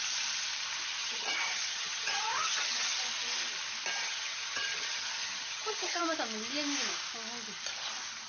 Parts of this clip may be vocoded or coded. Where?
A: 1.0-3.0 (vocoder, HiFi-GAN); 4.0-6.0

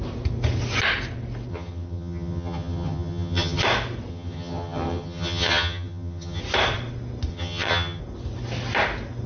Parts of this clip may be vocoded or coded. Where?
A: 1.5-3.6 (vocoder, HiFi-GAN); 4.1-6.4; 7.3-8.0

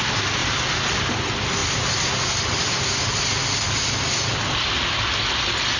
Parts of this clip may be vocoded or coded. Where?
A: none

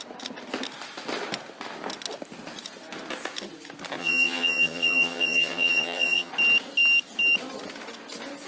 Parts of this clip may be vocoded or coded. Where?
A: 4.0-6.3 (vocoder, HiFi-GAN)